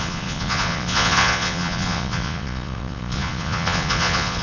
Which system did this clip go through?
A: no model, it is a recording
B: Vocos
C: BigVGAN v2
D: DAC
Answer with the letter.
B